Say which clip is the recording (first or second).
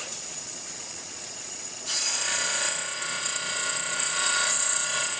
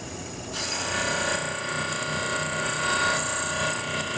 second